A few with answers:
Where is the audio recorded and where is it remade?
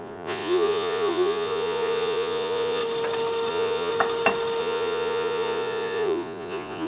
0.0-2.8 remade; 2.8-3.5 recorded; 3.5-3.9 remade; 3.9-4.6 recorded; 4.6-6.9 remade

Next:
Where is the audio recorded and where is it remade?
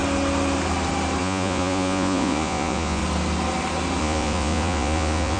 0.0-1.2 recorded; 1.2-3.0 remade; 3.0-4.0 recorded; 4.0-5.4 remade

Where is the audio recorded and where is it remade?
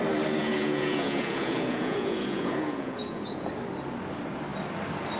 0.0-0.4 recorded; 0.4-3.5 remade; 3.5-5.2 recorded